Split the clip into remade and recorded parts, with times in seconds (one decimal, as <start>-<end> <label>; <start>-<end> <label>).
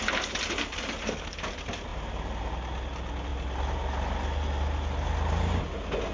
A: 0.0-6.1 recorded